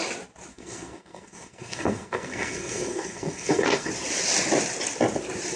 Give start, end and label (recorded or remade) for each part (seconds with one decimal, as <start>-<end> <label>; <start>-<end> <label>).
0.0-0.5 recorded; 0.5-3.9 remade; 3.9-5.6 recorded